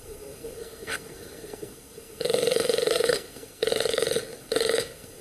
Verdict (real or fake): fake